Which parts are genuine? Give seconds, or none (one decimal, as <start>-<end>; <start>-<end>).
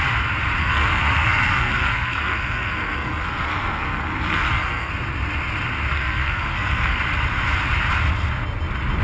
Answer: 0.0-0.6; 4.9-5.9; 7.0-9.0